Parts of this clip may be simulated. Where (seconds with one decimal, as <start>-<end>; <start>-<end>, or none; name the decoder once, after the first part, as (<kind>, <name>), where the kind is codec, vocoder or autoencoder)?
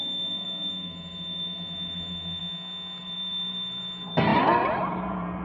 0.0-2.4 (vocoder, BigVGAN v2); 3.0-5.4